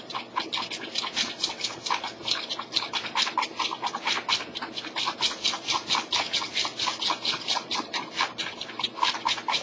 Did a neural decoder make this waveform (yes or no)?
no